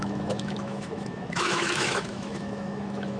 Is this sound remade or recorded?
remade